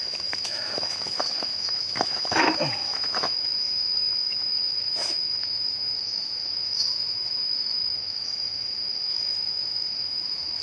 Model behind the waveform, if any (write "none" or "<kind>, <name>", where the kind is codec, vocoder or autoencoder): autoencoder, DAC-VAE